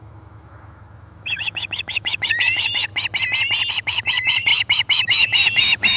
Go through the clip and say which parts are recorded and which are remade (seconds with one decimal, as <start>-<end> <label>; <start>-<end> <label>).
0.0-2.9 remade; 2.9-3.7 recorded; 3.7-6.0 remade